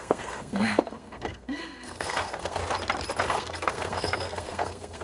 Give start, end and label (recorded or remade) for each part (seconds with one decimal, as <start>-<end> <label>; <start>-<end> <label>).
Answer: 0.0-2.6 remade; 2.6-3.3 recorded; 3.3-5.0 remade